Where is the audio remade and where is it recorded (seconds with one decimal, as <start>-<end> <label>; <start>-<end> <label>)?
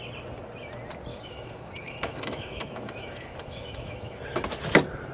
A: 0.0-1.1 recorded; 1.1-4.2 remade; 4.2-5.1 recorded